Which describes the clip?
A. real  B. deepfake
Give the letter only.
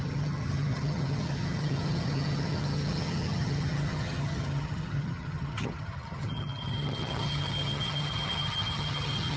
B